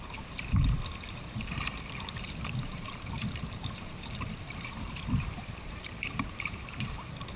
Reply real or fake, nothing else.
fake